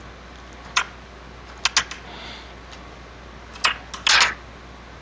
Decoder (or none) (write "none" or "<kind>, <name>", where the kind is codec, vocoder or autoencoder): none